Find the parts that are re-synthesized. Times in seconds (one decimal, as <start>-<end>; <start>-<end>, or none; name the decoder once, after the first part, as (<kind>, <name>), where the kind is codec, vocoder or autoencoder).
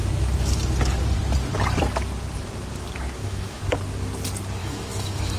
3.2-3.8 (autoencoder, DAC-VAE); 4.6-5.4